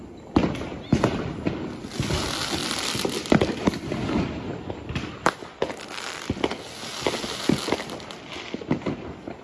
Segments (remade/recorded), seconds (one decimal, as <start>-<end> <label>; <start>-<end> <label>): 0.0-2.6 recorded; 2.6-3.9 remade; 3.9-4.5 recorded; 4.5-6.4 remade; 6.4-9.4 recorded